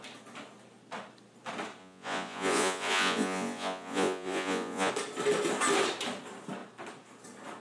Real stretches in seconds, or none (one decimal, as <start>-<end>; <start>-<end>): 0.0-1.8; 4.9-7.6